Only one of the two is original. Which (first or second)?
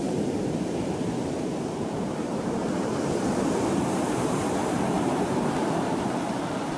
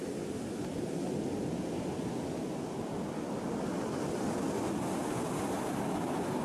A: second